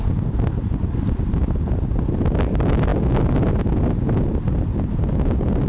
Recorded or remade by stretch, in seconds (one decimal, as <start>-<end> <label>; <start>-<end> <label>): 0.0-5.7 recorded